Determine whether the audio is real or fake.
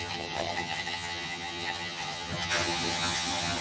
fake